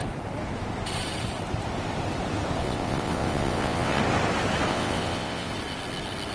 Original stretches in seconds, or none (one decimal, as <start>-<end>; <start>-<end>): 0.0-2.6; 4.0-4.7; 5.5-6.3